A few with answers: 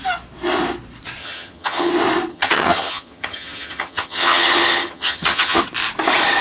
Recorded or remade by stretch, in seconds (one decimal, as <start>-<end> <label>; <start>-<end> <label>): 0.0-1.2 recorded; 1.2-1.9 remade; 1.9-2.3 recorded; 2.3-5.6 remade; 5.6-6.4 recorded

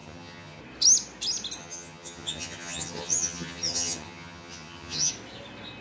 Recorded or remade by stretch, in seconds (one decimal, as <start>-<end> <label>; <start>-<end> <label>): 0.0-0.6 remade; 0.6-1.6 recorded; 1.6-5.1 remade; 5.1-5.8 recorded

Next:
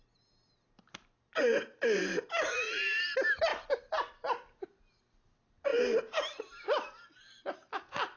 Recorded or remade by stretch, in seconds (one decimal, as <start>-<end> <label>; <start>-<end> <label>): 0.0-8.2 recorded

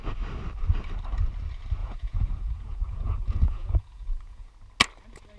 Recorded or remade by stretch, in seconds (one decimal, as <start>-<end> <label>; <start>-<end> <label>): 0.0-1.8 recorded; 1.8-4.5 remade; 4.5-5.4 recorded

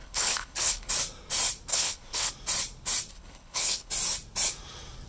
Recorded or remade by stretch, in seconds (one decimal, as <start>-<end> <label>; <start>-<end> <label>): 0.0-0.9 remade; 0.9-1.7 recorded; 1.7-2.3 remade; 2.3-3.1 recorded; 3.1-3.9 remade; 3.9-5.1 recorded

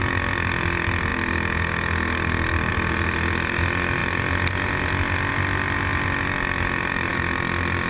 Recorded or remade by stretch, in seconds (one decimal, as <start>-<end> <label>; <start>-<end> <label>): 0.0-7.9 recorded

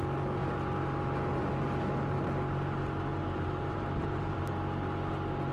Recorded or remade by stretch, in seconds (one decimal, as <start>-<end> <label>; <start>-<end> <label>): 0.0-3.1 recorded; 3.1-4.5 remade; 4.5-5.5 recorded

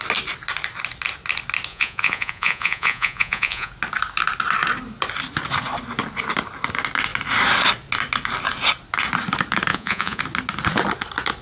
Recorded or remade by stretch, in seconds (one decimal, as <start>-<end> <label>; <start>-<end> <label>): 0.0-1.7 recorded; 1.7-3.7 remade; 3.7-9.7 recorded; 9.7-10.2 remade; 10.2-11.4 recorded